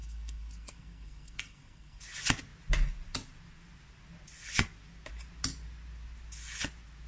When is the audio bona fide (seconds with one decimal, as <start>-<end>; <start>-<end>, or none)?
2.0-7.1